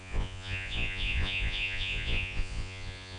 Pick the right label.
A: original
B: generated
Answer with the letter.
B